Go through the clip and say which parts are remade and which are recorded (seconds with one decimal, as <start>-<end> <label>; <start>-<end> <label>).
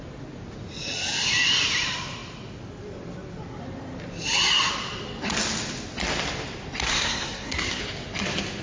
0.0-6.9 recorded; 6.9-7.8 remade; 7.8-8.6 recorded